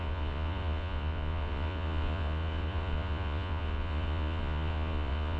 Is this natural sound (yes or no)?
no